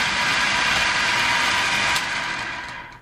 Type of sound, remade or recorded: recorded